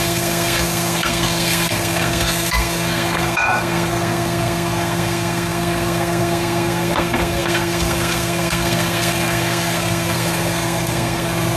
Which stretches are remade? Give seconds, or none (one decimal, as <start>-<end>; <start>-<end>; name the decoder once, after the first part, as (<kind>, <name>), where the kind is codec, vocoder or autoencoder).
0.0-11.6 (codec, SNAC)